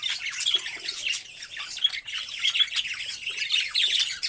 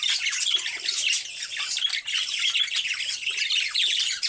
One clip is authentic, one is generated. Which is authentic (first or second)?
first